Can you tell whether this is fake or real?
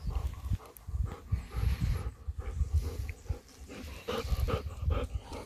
fake